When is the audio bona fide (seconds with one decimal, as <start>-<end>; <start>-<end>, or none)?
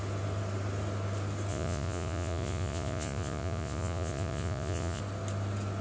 0.0-1.5; 5.0-5.8